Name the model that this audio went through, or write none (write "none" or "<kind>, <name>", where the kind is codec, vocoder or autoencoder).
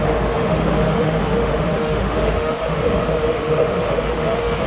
autoencoder, DAC-VAE